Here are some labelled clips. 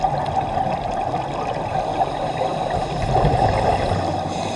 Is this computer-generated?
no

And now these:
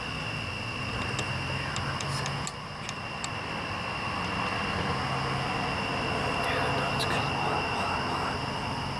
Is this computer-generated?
no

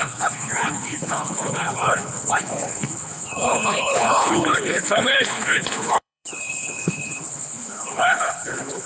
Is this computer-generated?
yes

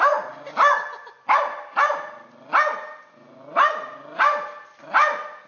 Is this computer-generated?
no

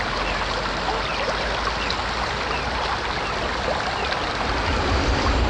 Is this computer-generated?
no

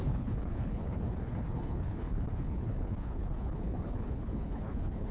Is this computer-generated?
yes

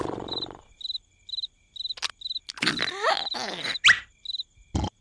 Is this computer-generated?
no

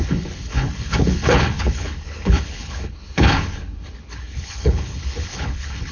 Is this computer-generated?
yes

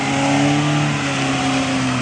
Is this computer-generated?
no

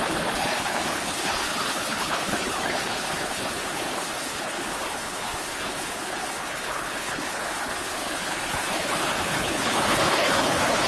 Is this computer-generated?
yes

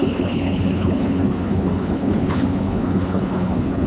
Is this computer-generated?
yes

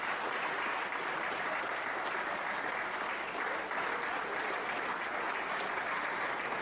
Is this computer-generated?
no